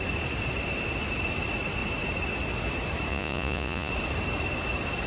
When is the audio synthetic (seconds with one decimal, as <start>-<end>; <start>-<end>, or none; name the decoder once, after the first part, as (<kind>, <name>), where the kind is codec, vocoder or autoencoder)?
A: 3.1-3.9 (vocoder, Vocos)